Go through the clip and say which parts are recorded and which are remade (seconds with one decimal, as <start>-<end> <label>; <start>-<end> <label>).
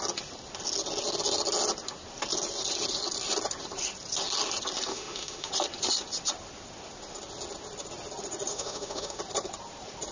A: 0.0-4.9 recorded; 4.9-5.5 remade; 5.5-8.5 recorded; 8.5-9.2 remade; 9.2-10.1 recorded